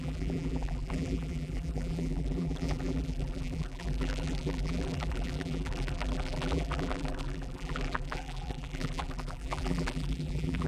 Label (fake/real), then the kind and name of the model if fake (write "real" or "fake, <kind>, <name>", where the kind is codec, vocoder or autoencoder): fake, vocoder, BigVGAN v2